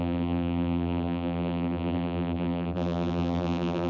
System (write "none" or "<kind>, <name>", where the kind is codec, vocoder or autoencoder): vocoder, BigVGAN v2